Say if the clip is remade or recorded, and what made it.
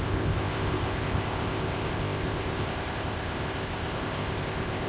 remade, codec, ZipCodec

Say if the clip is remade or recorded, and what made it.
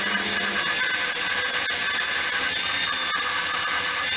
recorded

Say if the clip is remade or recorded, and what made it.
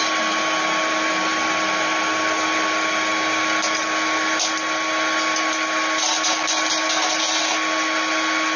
recorded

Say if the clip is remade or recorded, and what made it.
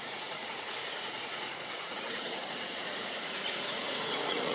remade, vocoder, Vocos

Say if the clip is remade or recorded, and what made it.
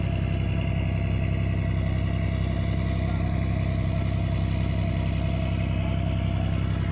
recorded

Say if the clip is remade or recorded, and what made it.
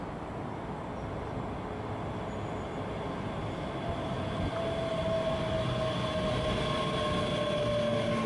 recorded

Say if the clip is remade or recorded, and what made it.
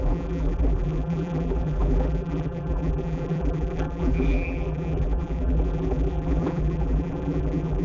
remade, vocoder, BigVGAN v2